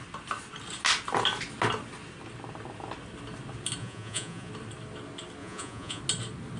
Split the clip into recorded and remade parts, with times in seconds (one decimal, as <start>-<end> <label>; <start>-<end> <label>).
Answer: 0.0-3.8 recorded; 3.8-4.5 remade; 4.5-5.4 recorded; 5.4-6.0 remade; 6.0-6.6 recorded